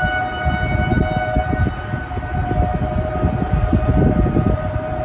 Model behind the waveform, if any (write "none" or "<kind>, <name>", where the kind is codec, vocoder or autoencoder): none